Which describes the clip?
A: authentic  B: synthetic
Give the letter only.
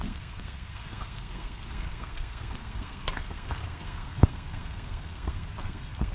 B